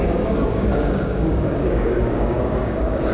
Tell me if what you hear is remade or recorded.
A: remade